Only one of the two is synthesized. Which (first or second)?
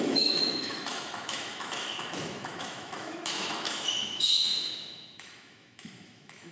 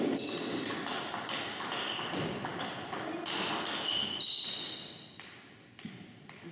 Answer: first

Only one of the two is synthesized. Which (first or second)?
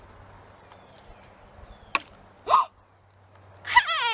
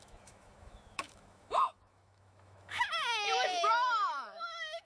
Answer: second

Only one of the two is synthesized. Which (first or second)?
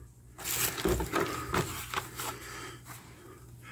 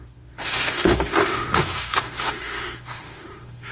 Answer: second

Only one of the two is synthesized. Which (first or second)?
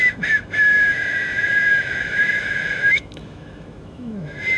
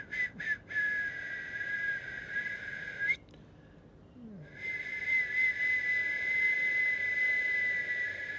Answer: first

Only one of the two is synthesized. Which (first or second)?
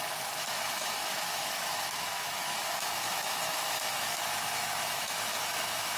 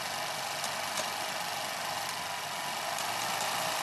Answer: first